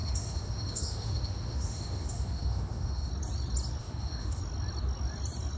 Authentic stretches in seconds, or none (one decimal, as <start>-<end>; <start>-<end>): 3.1-3.8; 4.4-5.6